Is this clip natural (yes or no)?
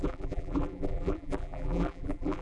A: no